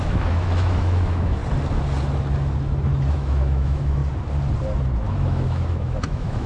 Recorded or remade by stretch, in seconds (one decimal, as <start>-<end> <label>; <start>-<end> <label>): 0.0-1.4 remade; 1.4-3.1 recorded; 3.1-4.0 remade; 4.0-5.1 recorded; 5.1-6.5 remade